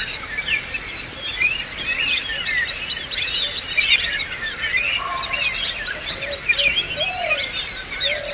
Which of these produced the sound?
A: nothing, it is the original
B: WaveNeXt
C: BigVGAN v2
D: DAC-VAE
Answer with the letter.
C